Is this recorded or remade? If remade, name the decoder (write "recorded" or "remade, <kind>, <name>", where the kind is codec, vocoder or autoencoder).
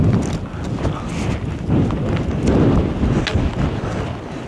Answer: recorded